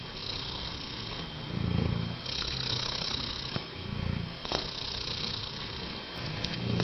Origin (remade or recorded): remade